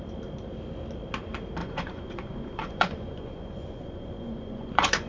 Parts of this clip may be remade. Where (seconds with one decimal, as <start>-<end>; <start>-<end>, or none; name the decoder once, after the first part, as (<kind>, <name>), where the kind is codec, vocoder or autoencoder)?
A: 1.6-5.1 (vocoder, Vocos)